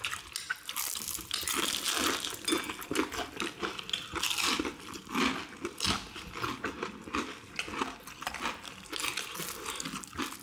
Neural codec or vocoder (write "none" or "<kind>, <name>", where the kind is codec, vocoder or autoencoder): none